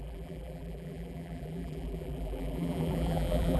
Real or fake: fake